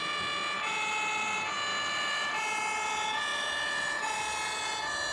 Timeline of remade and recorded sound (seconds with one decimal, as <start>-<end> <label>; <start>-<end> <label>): 0.0-1.7 recorded; 1.7-2.4 remade; 2.4-3.3 recorded; 3.3-4.2 remade; 4.2-5.1 recorded